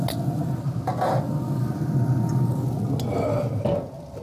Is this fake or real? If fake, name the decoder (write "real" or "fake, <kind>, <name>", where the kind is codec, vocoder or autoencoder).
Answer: real